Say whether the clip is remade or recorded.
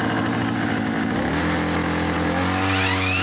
recorded